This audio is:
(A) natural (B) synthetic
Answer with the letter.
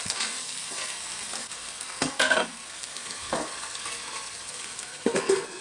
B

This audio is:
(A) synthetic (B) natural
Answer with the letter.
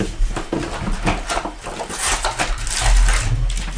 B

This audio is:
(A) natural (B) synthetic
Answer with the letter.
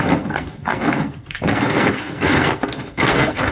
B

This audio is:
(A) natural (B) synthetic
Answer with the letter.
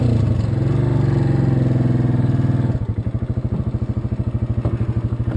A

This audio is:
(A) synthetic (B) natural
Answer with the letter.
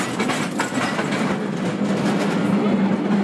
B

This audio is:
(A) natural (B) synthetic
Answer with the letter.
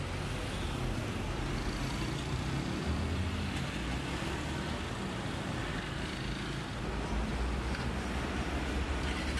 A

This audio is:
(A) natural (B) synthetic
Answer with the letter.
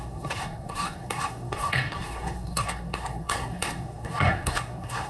B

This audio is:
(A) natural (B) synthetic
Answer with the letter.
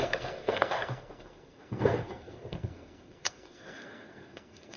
B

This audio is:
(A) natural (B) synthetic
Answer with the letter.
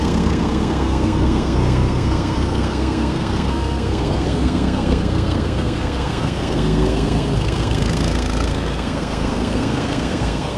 B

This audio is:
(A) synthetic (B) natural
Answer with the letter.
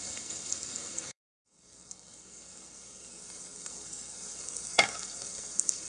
A